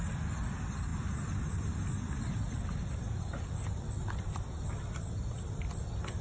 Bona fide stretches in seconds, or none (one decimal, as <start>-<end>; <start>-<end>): 0.0-6.2